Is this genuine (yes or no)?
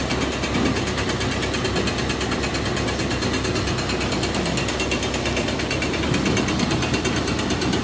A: yes